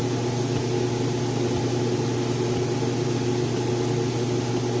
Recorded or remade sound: recorded